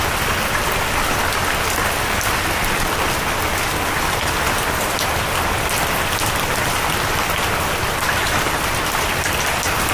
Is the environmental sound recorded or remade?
recorded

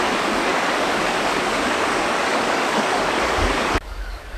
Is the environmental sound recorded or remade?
remade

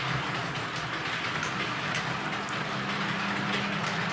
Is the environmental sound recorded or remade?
recorded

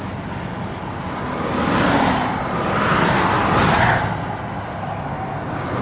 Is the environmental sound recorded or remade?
recorded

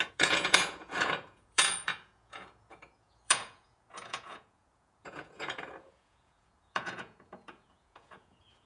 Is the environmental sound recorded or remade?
remade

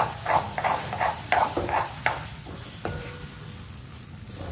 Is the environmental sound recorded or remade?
remade